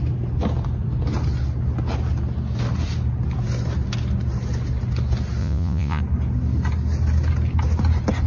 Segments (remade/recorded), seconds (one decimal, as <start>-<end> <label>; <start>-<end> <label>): 0.0-5.4 recorded; 5.4-6.0 remade; 6.0-8.3 recorded